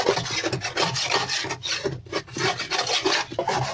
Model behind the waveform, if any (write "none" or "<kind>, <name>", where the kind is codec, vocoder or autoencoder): none